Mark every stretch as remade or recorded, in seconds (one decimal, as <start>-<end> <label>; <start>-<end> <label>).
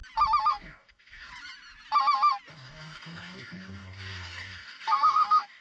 0.0-0.5 recorded; 0.5-1.3 remade; 1.3-2.5 recorded; 2.5-5.6 remade